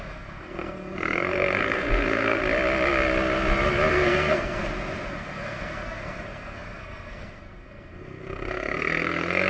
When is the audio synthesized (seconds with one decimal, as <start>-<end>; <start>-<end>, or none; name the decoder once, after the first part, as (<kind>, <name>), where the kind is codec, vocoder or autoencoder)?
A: 0.0-2.4 (codec, SNAC); 3.9-4.6; 5.1-9.5